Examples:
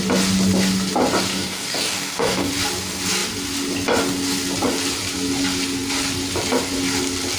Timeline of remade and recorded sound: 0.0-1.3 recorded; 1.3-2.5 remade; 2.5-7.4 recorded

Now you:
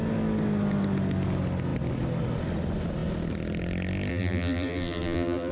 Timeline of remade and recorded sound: 0.0-4.1 recorded; 4.1-5.5 remade

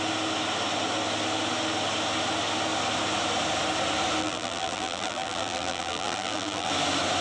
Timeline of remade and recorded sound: 0.0-4.2 recorded; 4.2-6.7 remade; 6.7-7.2 recorded